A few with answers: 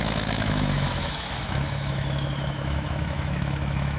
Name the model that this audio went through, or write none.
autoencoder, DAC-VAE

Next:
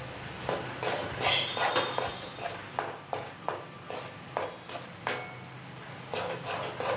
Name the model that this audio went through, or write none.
none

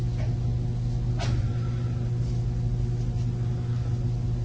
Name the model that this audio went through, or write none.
none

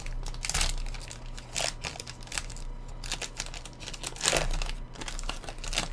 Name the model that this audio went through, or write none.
none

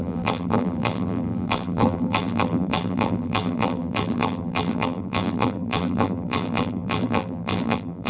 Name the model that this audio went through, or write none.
vocoder, BigVGAN v2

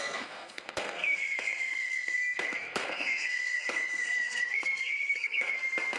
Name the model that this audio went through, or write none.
codec, SNAC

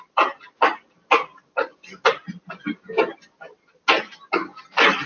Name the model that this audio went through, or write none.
none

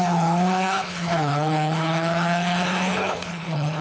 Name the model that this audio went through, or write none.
codec, HILCodec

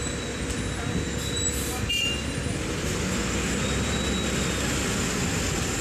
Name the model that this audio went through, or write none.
none